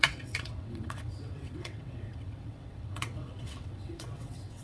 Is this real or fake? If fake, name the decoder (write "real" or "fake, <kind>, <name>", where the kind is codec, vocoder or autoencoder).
fake, vocoder, WaveNeXt